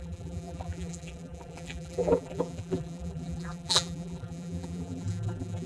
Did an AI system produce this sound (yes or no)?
yes